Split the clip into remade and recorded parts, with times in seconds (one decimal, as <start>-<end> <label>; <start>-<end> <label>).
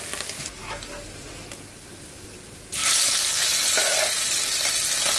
0.0-5.2 recorded